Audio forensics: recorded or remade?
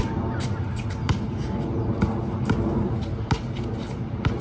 recorded